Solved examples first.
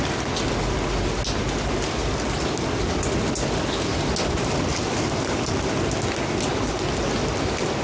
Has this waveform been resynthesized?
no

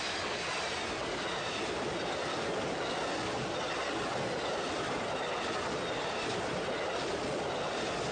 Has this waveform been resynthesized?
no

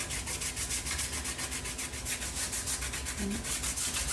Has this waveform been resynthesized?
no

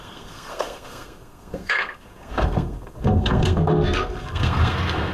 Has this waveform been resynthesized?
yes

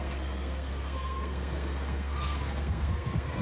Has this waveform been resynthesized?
yes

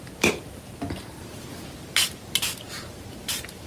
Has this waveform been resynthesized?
no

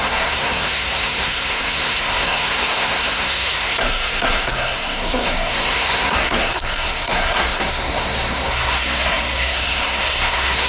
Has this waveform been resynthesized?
yes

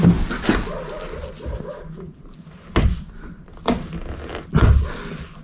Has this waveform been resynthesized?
no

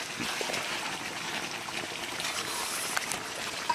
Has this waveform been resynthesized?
no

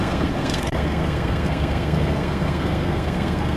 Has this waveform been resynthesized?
yes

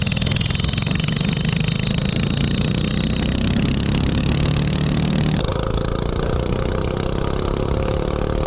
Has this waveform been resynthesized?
no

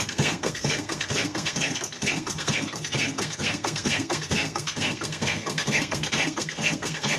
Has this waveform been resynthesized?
yes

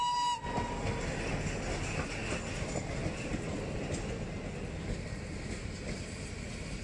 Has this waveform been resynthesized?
no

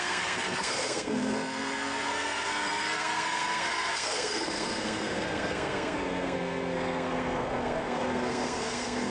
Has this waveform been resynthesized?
yes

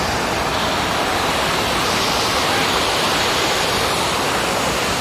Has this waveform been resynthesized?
no